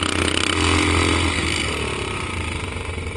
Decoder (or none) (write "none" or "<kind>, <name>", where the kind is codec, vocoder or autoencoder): none